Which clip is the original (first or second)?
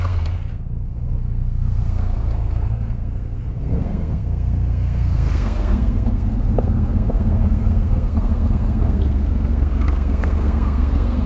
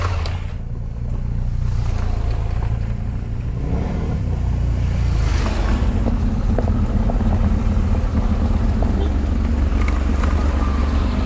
second